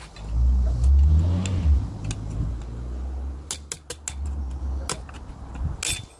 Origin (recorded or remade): recorded